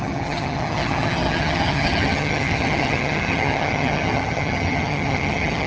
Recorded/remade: remade